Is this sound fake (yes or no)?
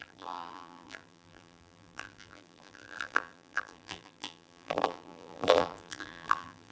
yes